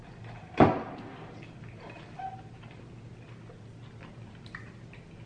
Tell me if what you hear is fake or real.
real